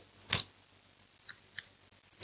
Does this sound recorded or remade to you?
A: recorded